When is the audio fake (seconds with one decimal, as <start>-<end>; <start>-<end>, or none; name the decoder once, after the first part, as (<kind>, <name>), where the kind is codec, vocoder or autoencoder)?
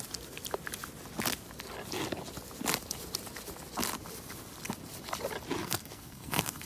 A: 5.6-6.7 (codec, SNAC)